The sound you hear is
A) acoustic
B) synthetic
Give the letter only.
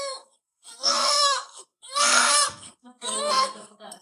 B